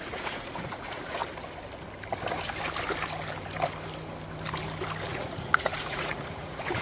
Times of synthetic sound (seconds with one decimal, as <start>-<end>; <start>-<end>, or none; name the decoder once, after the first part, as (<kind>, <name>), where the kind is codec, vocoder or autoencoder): 0.0-1.2 (vocoder, Vocos); 5.1-6.8